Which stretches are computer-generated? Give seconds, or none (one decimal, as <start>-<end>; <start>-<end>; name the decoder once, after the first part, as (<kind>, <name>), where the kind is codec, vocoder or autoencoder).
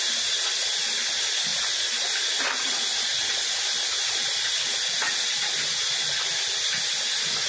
none